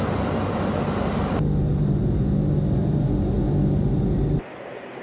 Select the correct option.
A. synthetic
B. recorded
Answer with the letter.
B